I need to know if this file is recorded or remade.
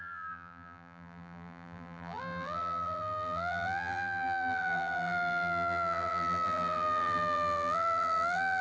remade